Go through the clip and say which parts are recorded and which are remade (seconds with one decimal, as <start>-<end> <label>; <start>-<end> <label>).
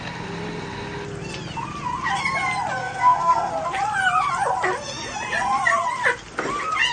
0.0-2.8 recorded; 2.8-3.5 remade; 3.5-6.9 recorded